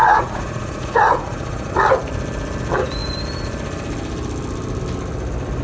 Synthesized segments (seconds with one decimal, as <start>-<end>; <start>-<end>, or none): 0.0-1.7

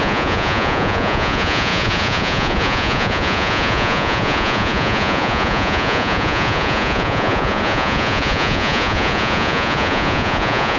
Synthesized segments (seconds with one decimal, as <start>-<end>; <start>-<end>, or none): 0.0-10.8

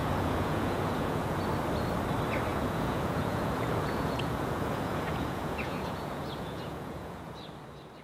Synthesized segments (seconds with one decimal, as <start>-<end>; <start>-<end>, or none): 0.0-1.4; 2.5-7.3

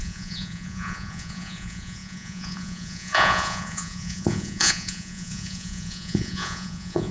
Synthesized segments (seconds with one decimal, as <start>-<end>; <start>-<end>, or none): 0.0-7.1

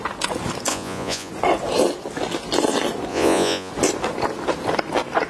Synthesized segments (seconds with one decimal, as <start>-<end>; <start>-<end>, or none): 0.7-1.3; 3.1-3.7

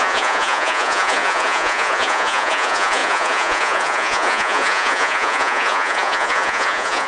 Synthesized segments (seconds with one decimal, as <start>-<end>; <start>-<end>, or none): 0.0-7.1

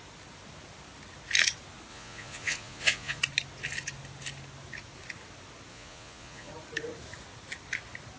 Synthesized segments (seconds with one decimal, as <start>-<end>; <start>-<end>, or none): 1.9-3.2; 5.7-6.5

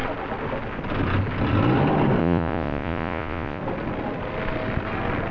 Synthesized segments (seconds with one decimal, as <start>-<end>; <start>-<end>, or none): 2.2-3.6